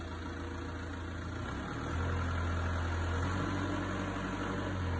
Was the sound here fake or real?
real